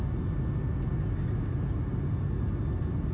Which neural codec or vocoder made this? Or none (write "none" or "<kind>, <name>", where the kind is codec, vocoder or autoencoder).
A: none